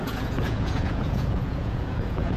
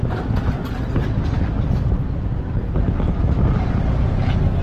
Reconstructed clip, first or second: first